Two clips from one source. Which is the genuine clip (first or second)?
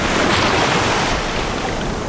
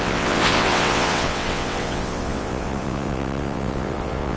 first